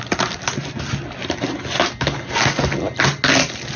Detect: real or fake real